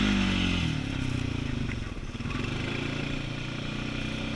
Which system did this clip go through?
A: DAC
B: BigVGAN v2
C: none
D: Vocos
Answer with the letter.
C